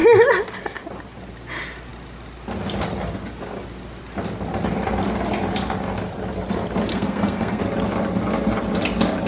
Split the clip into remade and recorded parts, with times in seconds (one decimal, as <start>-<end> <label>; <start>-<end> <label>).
0.0-6.9 recorded; 6.9-7.6 remade; 7.6-9.3 recorded